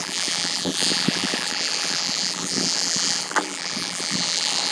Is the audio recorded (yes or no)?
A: no